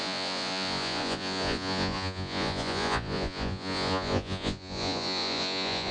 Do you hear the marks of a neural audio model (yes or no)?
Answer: yes